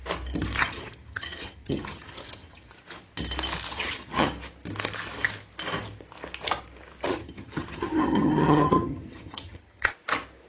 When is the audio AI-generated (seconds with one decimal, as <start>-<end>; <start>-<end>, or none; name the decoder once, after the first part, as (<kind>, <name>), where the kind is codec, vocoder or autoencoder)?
0.6-2.7 (vocoder, HiFi-GAN); 3.7-4.3; 7.1-9.9

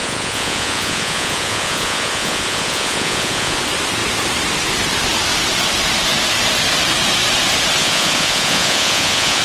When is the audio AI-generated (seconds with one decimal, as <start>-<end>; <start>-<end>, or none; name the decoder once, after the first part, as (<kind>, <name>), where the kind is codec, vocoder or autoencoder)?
0.0-3.6 (vocoder, Vocos); 7.8-9.4